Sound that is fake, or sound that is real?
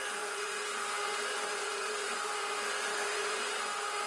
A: fake